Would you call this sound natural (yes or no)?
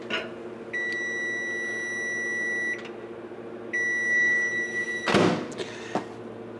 yes